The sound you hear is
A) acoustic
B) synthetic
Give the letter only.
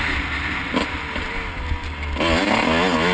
A